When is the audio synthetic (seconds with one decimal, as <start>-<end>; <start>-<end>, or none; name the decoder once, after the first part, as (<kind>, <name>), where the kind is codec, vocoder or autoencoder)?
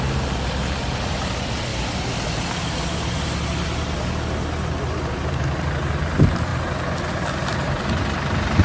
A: 0.0-1.7 (vocoder, BigVGAN v2); 6.1-6.5; 7.1-8.6